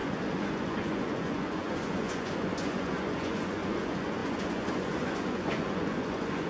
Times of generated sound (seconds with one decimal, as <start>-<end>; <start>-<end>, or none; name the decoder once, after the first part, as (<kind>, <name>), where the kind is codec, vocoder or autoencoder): 0.0-6.5 (vocoder, Vocos)

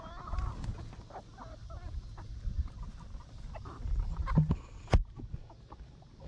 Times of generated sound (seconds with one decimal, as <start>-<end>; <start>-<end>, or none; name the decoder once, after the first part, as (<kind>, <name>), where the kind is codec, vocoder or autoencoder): 1.6-4.1 (vocoder, BigVGAN v2)